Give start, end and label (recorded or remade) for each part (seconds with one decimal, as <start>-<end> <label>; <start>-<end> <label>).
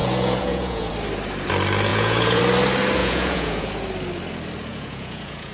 0.0-0.9 remade; 0.9-1.9 recorded; 1.9-2.4 remade; 2.4-3.0 recorded; 3.0-3.7 remade; 3.7-4.7 recorded; 4.7-5.5 remade